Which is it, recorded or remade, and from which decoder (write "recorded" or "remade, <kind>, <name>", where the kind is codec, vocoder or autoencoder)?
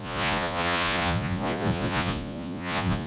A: remade, vocoder, Vocos